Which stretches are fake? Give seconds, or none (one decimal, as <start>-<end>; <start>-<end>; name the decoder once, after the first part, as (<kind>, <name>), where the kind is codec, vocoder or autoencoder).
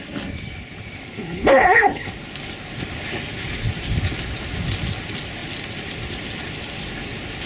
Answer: 1.1-2.1 (codec, HILCodec)